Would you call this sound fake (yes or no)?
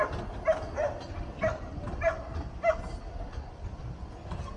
no